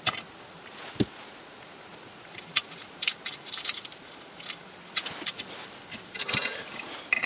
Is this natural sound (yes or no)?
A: yes